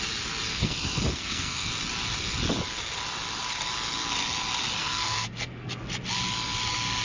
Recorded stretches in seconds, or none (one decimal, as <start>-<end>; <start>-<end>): 0.0-0.5; 1.7-4.8; 5.7-7.0